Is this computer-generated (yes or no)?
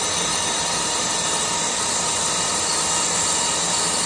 no